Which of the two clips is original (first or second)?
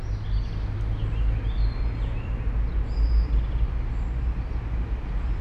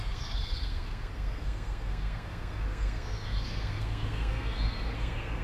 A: first